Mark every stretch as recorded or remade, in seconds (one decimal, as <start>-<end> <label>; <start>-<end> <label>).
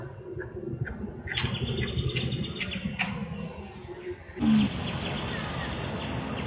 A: 0.0-6.5 recorded